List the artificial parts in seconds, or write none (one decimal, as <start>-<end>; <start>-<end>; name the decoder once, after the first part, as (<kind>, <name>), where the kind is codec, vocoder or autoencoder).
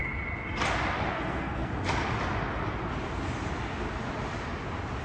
1.1-1.7 (codec, SNAC)